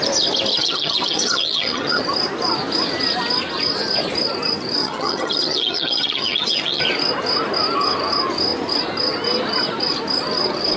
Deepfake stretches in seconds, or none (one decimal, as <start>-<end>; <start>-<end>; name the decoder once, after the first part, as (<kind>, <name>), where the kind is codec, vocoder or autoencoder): 0.5-2.0 (vocoder, HiFi-GAN); 4.8-6.8